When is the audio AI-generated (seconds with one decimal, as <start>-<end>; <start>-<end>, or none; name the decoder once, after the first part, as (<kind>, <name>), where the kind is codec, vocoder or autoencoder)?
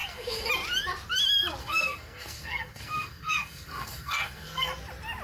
0.0-0.5 (codec, SNAC); 1.6-4.7